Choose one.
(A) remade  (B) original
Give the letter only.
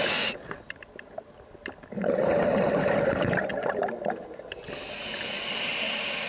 B